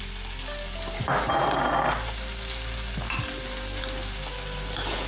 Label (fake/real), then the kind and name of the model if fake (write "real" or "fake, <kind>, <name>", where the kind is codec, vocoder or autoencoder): real